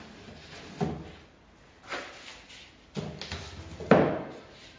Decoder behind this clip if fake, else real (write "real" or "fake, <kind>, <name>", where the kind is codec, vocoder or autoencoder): real